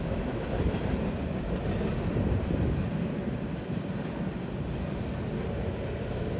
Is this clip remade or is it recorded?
recorded